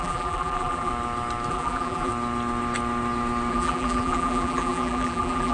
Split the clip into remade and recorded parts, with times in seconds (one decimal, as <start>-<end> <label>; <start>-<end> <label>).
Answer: 0.0-0.9 remade; 0.9-1.5 recorded; 1.5-2.1 remade; 2.1-3.5 recorded; 3.5-5.5 remade

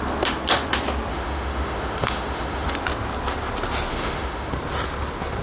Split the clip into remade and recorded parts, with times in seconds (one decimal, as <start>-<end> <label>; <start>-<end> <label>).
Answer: 0.0-1.1 recorded; 1.1-2.7 remade; 2.7-3.9 recorded; 3.9-4.5 remade; 4.5-5.4 recorded

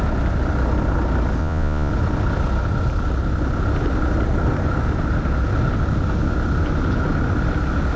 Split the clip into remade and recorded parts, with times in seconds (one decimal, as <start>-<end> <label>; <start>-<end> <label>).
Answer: 0.0-1.4 recorded; 1.4-1.9 remade; 1.9-8.0 recorded

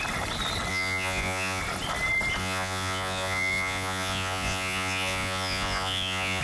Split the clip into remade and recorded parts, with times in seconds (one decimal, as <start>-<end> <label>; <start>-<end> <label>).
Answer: 0.0-0.7 recorded; 0.7-1.6 remade; 1.6-2.4 recorded; 2.4-6.4 remade

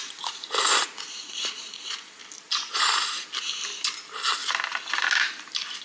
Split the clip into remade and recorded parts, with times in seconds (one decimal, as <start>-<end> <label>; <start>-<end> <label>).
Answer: 0.0-2.2 remade; 2.2-5.8 recorded